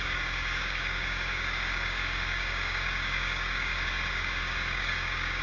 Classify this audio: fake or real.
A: fake